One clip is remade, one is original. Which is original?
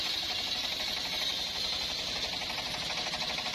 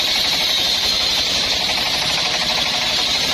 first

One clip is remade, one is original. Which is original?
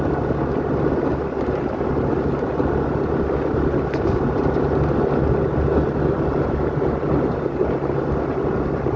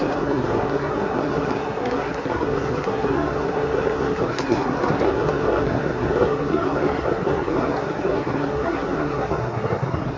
first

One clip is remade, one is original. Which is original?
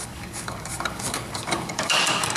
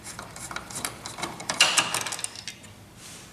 second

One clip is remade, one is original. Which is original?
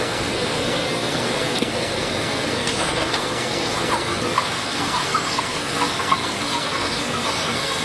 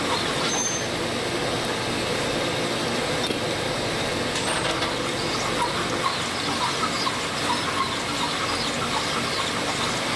second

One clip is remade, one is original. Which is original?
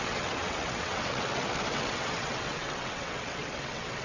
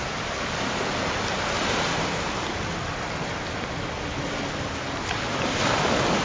second